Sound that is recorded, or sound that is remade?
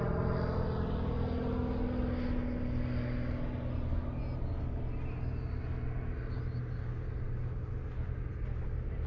recorded